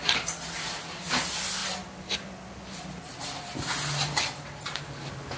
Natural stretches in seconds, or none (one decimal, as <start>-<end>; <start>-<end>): 0.0-5.4